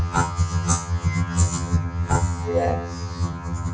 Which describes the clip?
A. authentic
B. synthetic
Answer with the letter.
B